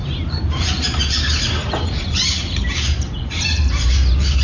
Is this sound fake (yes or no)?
yes